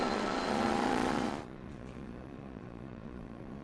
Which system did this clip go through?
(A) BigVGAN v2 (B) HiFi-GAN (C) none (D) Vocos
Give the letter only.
D